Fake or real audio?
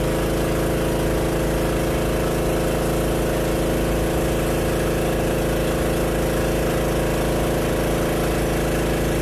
real